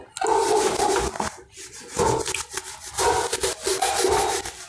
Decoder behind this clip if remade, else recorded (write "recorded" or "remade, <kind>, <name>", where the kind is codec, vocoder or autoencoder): recorded